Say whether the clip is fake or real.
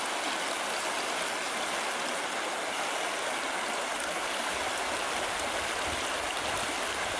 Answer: real